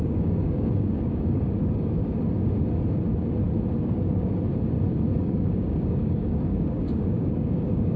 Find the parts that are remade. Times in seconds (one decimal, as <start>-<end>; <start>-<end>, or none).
0.0-2.0; 3.8-4.3; 5.2-8.0